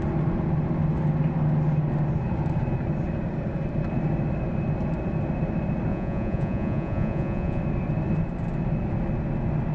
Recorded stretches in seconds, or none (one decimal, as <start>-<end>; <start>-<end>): 0.0-5.9; 7.6-9.7